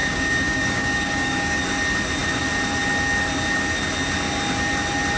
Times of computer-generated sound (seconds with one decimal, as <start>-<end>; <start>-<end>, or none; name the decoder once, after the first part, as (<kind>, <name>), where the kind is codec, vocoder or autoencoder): 0.0-1.6 (codec, DAC)